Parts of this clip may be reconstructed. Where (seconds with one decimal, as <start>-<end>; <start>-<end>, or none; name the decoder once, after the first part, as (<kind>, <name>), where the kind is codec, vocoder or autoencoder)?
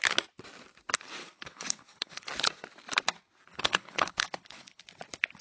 1.2-2.3 (codec, HILCodec); 3.5-4.8